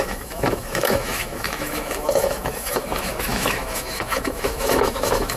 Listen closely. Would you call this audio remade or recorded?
remade